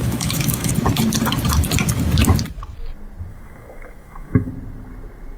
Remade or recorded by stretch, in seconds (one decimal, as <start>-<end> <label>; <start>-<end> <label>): 0.0-0.7 remade; 0.7-3.3 recorded; 3.3-4.5 remade; 4.5-5.4 recorded